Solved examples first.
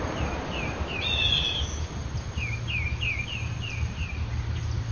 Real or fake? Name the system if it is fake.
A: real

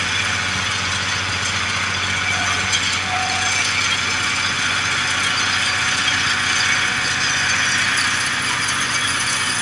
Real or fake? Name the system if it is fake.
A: fake, vocoder, Vocos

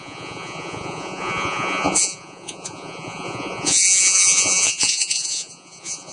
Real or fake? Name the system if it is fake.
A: fake, vocoder, Vocos